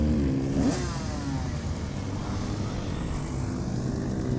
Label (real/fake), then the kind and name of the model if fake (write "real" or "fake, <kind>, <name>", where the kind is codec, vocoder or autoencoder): real